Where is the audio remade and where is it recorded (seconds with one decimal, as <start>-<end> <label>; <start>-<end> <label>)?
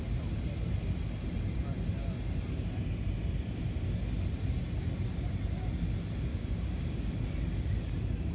0.0-6.3 recorded; 6.3-7.1 remade; 7.1-8.3 recorded